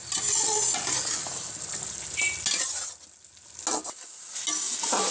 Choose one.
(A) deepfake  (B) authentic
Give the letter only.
B